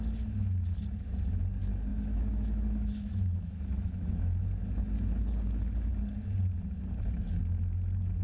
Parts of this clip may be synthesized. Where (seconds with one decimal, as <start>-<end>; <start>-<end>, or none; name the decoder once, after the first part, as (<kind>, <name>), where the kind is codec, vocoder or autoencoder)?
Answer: 1.9-4.4 (autoencoder, DAC-VAE)